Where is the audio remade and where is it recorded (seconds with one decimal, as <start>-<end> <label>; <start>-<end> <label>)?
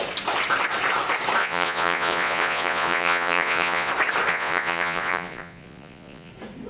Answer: 0.0-1.4 recorded; 1.4-3.9 remade; 3.9-4.3 recorded; 4.3-6.3 remade; 6.3-6.7 recorded